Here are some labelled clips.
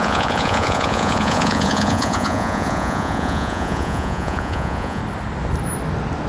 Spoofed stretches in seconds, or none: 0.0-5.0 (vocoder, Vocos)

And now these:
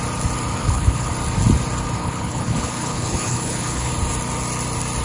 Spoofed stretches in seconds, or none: 0.6-1.1 (codec, HILCodec); 2.0-3.9

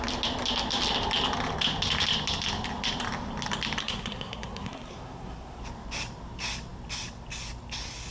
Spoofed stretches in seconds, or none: 3.8-5.6 (codec, SNAC)

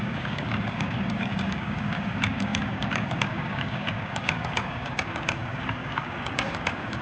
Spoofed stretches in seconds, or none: 0.0-7.0 (codec, DAC)

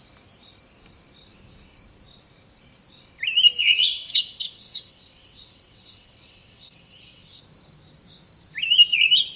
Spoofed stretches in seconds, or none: 3.6-7.4 (vocoder, WaveNeXt)